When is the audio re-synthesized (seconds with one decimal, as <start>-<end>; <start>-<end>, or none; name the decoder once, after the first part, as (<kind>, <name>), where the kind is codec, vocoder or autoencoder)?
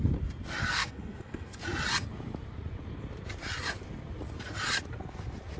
0.6-1.6 (codec, SNAC)